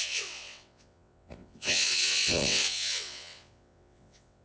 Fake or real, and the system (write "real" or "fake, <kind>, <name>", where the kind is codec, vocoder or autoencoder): fake, vocoder, WaveNeXt